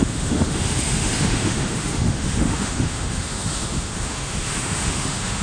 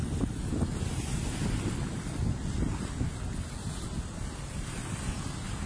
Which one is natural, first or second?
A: second